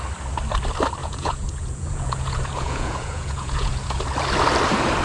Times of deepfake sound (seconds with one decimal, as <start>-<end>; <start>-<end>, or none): 1.0-4.0